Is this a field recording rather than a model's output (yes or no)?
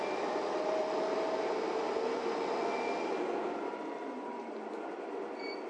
no